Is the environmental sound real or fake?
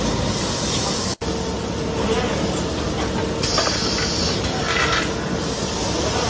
real